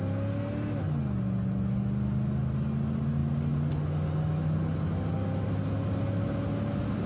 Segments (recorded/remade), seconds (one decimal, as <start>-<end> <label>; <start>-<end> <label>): 0.0-7.1 recorded